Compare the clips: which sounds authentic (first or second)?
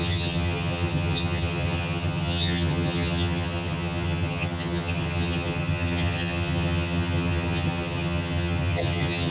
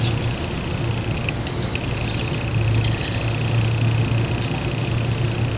second